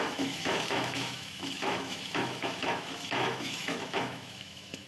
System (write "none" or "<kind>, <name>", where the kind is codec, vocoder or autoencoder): autoencoder, DAC-VAE